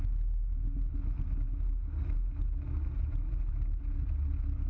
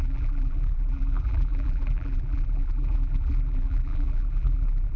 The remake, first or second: second